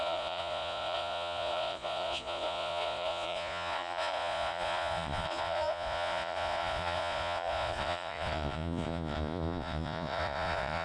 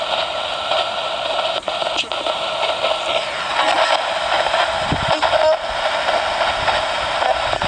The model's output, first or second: first